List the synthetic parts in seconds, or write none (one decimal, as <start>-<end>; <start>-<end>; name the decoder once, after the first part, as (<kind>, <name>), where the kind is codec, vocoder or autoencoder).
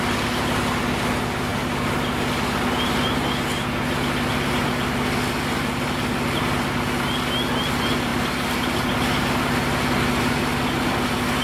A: none